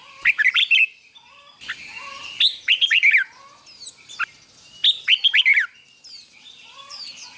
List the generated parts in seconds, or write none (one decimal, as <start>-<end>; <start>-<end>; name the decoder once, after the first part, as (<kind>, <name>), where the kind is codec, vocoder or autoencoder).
none